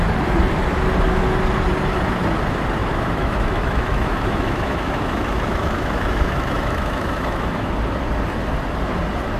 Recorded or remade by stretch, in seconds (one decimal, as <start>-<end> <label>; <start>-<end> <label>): 0.0-2.8 recorded; 2.8-7.7 remade; 7.7-9.4 recorded